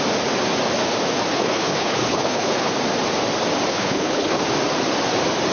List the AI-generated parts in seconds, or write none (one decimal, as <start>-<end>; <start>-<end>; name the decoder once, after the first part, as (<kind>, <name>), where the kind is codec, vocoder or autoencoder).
1.3-2.7 (codec, HILCodec); 3.7-4.4